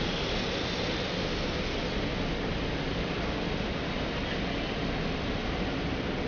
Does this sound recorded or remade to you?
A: recorded